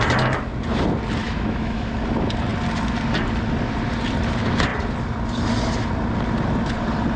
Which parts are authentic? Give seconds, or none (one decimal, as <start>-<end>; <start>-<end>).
0.0-1.2; 1.9-7.2